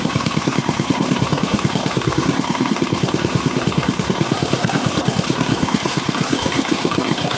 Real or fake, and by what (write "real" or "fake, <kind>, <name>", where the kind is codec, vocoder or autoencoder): fake, codec, SNAC